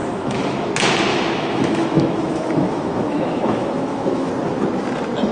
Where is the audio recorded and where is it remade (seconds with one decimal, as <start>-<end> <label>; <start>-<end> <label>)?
0.0-0.7 remade; 0.7-1.1 recorded; 1.1-4.3 remade; 4.3-5.3 recorded